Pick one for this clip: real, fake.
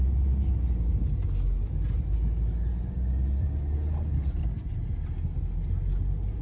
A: real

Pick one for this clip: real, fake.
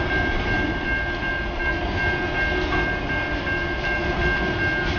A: real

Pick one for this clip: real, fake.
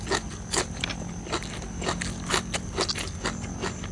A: real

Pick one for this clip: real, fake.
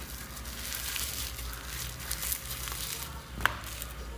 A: real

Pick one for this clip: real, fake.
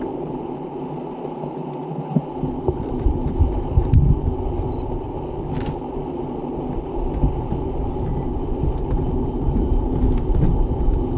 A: real